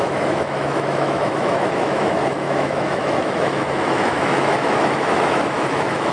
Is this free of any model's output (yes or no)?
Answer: no